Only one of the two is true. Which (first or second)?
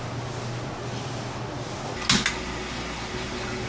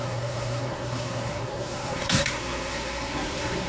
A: first